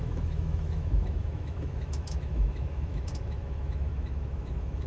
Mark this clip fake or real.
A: fake